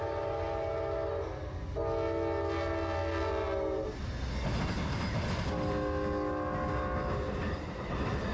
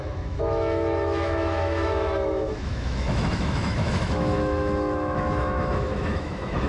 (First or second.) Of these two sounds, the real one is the first